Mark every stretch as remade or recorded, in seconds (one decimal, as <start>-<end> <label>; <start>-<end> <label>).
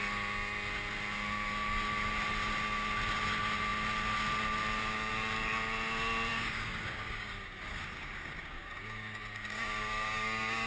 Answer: 0.0-6.3 recorded; 6.3-10.7 remade